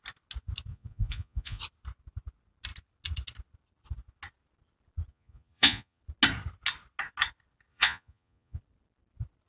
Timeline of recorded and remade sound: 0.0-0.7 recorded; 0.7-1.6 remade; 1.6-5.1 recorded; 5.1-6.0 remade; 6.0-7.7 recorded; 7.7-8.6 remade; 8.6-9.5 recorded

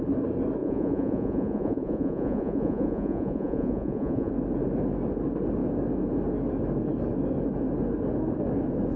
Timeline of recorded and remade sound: 0.0-0.6 recorded; 0.6-4.3 remade; 4.3-9.0 recorded

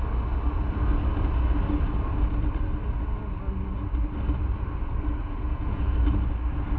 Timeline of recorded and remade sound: 0.0-5.2 recorded; 5.2-5.9 remade; 5.9-6.8 recorded

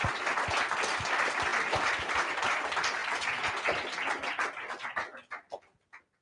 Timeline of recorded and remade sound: 0.0-6.2 recorded

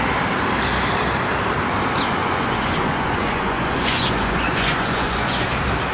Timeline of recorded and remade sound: 0.0-2.2 recorded; 2.2-5.5 remade; 5.5-5.9 recorded

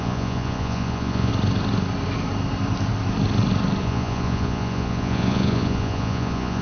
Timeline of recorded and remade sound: 0.0-1.3 remade; 1.3-3.8 recorded; 3.8-6.6 remade